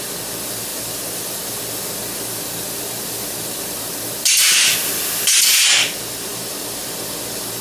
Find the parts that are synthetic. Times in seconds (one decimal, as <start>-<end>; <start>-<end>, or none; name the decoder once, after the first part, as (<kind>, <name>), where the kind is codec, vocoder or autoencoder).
0.7-1.4 (vocoder, BigVGAN v2)